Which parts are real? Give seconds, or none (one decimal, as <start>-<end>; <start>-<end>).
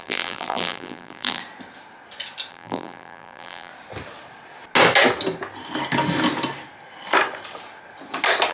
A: 1.4-2.5; 3.7-8.5